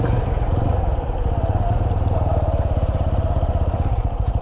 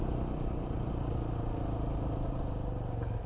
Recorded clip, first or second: second